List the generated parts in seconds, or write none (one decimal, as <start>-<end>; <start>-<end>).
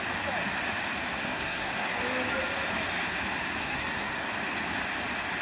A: 1.1-1.9; 3.6-4.3